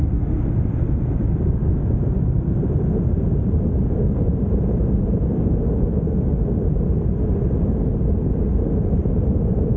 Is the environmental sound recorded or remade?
recorded